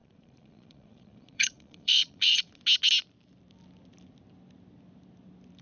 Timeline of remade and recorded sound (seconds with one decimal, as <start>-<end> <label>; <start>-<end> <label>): 0.0-2.6 remade; 2.6-5.6 recorded